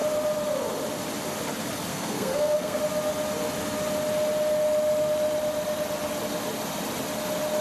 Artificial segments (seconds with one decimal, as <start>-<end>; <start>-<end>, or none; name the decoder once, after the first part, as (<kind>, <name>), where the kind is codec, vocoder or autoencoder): 1.9-2.8 (codec, SNAC)